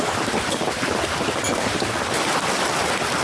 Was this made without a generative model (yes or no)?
no